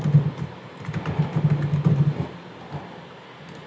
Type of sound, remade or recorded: recorded